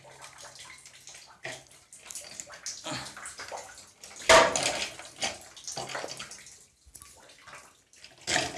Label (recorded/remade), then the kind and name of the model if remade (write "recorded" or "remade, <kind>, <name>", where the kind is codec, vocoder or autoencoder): recorded